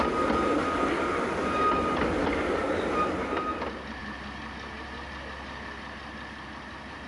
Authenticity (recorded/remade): recorded